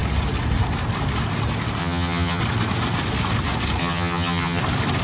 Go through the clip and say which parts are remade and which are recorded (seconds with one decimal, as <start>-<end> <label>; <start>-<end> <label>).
0.0-1.8 recorded; 1.8-2.4 remade; 2.4-3.8 recorded; 3.8-4.6 remade; 4.6-5.0 recorded

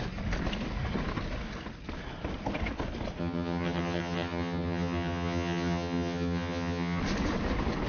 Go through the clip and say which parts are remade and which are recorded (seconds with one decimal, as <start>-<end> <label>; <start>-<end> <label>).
0.0-3.2 recorded; 3.2-7.0 remade; 7.0-7.9 recorded

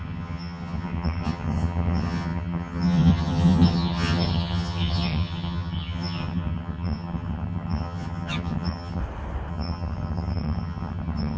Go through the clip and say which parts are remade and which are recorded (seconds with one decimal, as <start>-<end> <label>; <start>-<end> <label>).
0.0-9.0 remade; 9.0-9.5 recorded; 9.5-11.4 remade

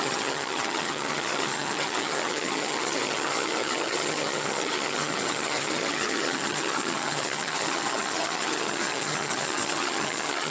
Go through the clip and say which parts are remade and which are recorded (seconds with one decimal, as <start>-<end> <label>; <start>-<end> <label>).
0.0-10.5 remade

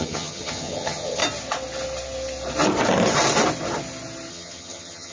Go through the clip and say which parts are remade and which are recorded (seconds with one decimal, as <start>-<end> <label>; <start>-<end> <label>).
0.0-1.2 remade; 1.2-4.3 recorded; 4.3-5.1 remade

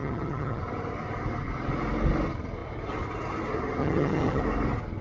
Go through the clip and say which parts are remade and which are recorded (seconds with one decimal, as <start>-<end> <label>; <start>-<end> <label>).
0.0-0.6 remade; 0.6-3.8 recorded; 3.8-4.4 remade; 4.4-5.0 recorded

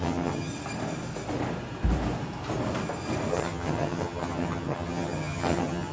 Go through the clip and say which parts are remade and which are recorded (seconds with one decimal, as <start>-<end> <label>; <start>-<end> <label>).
0.0-0.5 remade; 0.5-3.3 recorded; 3.3-5.9 remade

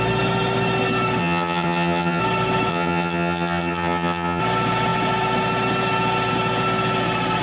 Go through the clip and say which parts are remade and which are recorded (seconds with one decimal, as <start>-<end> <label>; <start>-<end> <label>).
0.0-1.2 recorded; 1.2-2.2 remade; 2.2-2.7 recorded; 2.7-4.4 remade; 4.4-7.4 recorded